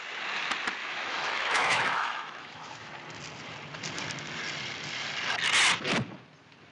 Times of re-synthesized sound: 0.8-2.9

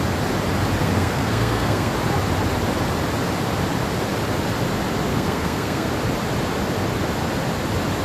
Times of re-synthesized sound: 0.8-1.9; 5.1-5.9

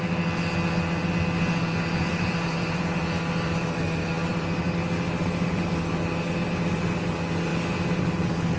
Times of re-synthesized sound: 2.1-2.8

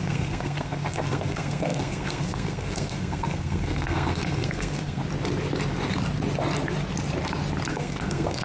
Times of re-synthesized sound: 0.0-5.0; 7.7-8.4

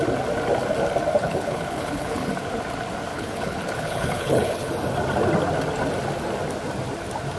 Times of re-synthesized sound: 1.2-2.3; 3.1-4.7

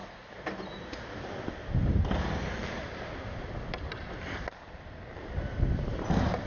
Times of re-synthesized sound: none

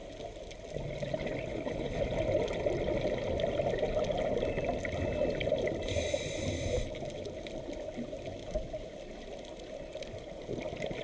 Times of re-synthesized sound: 1.5-2.0